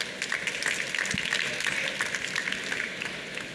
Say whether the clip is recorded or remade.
recorded